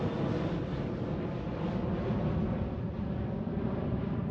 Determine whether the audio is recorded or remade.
recorded